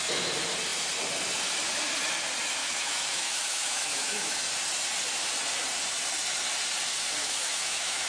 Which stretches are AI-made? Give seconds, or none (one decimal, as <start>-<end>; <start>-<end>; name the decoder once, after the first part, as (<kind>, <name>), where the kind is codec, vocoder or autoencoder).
2.6-4.4 (autoencoder, DAC-VAE); 7.2-8.1